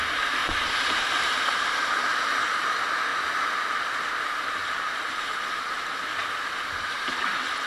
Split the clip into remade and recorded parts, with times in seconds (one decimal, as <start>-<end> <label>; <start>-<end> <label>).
0.0-0.4 recorded; 0.4-2.7 remade; 2.7-3.1 recorded; 3.1-3.6 remade; 3.6-4.6 recorded; 4.6-7.2 remade; 7.2-7.7 recorded